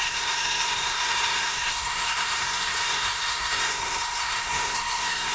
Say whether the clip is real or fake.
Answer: fake